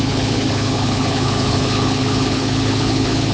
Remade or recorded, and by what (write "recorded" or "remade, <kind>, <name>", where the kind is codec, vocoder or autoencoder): remade, codec, HILCodec